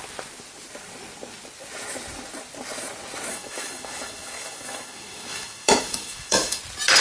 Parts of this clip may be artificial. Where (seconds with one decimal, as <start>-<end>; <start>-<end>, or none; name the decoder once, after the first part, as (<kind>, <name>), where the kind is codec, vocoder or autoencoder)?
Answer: 3.3-6.6 (autoencoder, DAC-VAE)